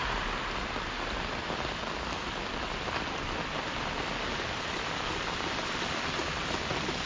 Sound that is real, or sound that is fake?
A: real